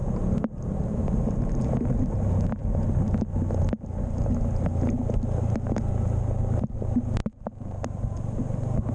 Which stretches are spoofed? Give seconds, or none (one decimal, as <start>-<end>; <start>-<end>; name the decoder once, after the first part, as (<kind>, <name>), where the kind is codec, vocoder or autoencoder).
0.0-2.0 (vocoder, BigVGAN v2)